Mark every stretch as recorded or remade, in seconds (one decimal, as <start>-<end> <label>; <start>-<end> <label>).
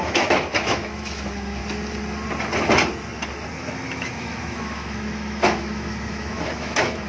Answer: 0.0-1.6 remade; 1.6-3.5 recorded; 3.5-7.1 remade